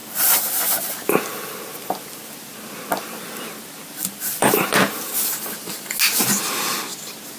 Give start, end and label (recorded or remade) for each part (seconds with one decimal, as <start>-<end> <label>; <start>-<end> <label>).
0.0-0.9 remade; 0.9-1.3 recorded; 1.3-5.5 remade; 5.5-7.4 recorded